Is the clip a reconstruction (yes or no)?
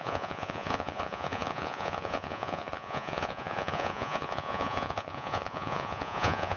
yes